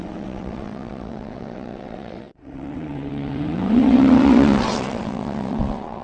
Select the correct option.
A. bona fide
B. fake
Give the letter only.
B